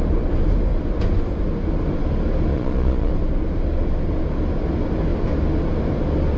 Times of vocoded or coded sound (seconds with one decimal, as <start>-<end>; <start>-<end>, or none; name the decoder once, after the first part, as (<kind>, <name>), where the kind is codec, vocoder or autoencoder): 2.5-3.1 (vocoder, Vocos)